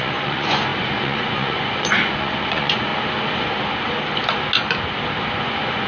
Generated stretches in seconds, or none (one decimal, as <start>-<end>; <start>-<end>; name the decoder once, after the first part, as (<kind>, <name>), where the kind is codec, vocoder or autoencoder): 0.0-2.9 (vocoder, Vocos); 5.3-5.9